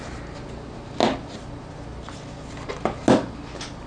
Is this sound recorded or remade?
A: recorded